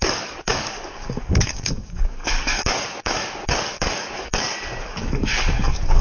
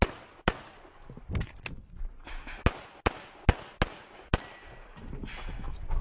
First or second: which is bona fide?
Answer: second